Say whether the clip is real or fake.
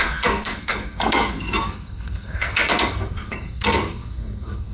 fake